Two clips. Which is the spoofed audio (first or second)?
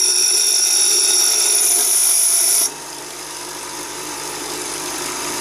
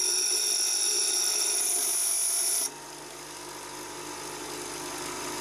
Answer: first